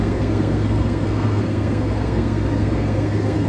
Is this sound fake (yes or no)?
yes